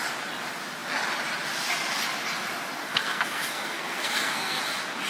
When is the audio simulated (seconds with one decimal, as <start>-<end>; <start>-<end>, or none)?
2.8-4.6